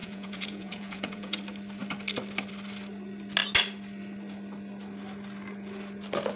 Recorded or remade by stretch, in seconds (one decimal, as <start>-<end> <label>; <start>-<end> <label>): 0.0-1.4 remade; 1.4-6.3 recorded